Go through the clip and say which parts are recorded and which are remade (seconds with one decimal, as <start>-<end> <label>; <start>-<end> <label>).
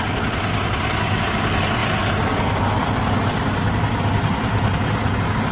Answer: 0.0-5.5 recorded